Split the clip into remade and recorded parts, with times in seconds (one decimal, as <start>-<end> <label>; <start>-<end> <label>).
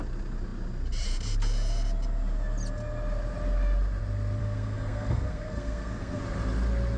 0.0-4.4 recorded; 4.4-6.2 remade; 6.2-7.0 recorded